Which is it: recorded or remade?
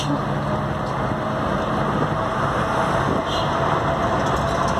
recorded